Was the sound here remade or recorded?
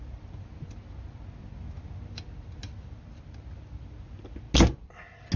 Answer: recorded